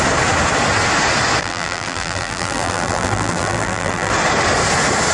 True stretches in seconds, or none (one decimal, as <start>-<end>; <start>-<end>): 0.0-1.4; 4.1-5.1